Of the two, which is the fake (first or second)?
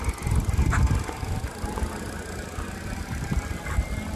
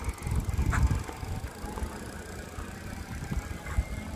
second